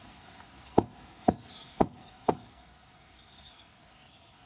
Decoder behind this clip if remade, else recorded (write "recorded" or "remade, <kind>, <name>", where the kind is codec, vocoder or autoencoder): remade, codec, SNAC